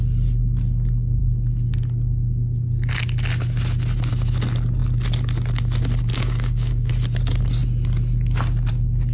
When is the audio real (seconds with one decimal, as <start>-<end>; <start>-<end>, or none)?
0.0-6.1; 6.9-9.1